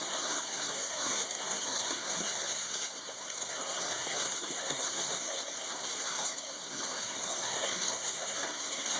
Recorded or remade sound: remade